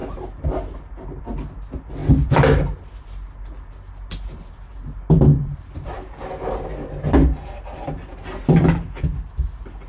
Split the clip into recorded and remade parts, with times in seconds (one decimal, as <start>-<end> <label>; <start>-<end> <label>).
0.0-9.9 recorded